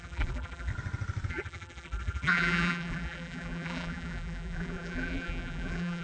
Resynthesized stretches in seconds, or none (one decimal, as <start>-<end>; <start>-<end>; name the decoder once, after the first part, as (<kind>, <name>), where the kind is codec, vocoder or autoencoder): 0.0-0.7 (vocoder, BigVGAN v2); 1.3-6.0